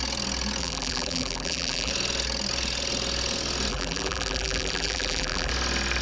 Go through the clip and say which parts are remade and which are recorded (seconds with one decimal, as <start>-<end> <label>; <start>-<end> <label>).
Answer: 0.0-0.6 recorded; 0.6-1.9 remade; 1.9-3.7 recorded; 3.7-5.5 remade; 5.5-6.0 recorded